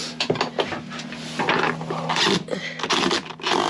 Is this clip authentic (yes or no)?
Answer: yes